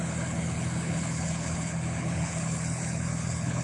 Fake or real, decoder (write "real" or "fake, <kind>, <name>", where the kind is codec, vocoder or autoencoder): fake, codec, HILCodec